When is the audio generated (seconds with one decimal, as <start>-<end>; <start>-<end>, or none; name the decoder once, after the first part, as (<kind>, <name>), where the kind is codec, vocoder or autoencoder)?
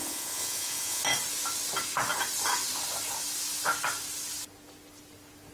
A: 0.0-1.0 (vocoder, Vocos)